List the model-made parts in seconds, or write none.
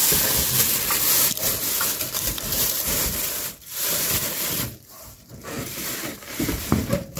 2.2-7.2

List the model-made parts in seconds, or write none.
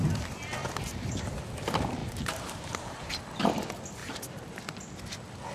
0.6-1.4; 2.0-3.1; 4.0-4.6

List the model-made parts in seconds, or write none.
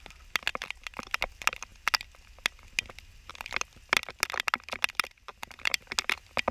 5.3-5.8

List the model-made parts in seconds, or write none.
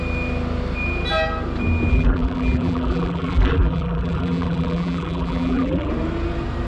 1.9-5.9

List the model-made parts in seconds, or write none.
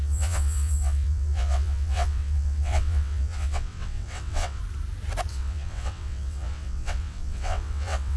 0.0-4.6; 5.3-8.2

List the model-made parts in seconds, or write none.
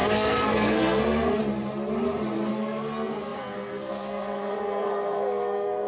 0.0-1.4; 2.5-5.9